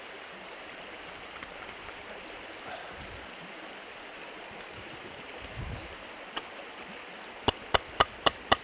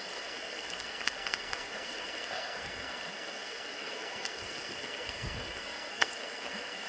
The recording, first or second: first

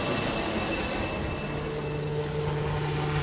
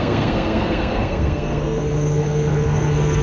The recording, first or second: first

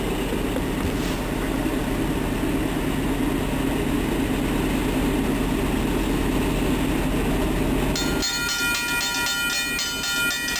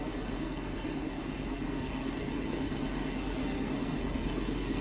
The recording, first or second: first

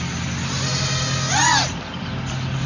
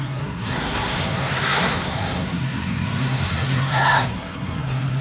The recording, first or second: first